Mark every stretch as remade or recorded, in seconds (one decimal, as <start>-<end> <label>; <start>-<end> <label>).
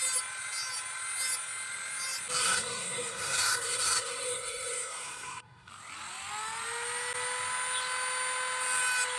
0.0-2.4 recorded; 2.4-5.7 remade; 5.7-9.2 recorded